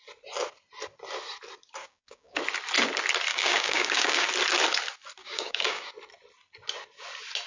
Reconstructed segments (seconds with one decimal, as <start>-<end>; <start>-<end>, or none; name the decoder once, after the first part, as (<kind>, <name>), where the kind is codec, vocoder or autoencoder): 1.8-2.4 (codec, DAC); 3.3-4.3; 5.2-5.9

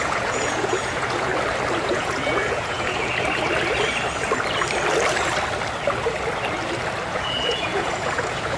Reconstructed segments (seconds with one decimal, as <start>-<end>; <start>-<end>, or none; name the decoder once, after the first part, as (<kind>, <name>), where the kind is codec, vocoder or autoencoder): 0.0-1.3 (vocoder, Vocos); 1.8-3.1; 7.1-8.6

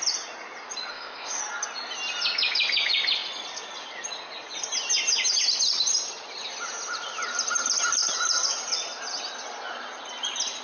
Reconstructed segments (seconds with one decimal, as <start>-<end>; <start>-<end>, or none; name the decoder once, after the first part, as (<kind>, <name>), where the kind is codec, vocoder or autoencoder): 0.9-1.4 (codec, ZipCodec)

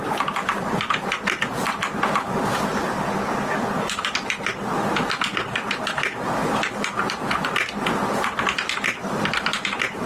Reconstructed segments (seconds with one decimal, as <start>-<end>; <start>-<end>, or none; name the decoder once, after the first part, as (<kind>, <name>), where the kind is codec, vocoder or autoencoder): 0.0-1.0 (vocoder, BigVGAN v2)

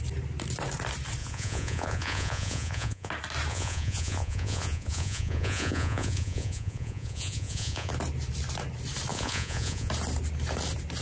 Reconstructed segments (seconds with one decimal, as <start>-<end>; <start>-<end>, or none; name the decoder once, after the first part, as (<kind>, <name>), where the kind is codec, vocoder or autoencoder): 1.2-3.1 (vocoder, Vocos); 3.5-7.9; 9.1-9.9